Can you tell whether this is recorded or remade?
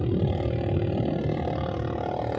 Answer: recorded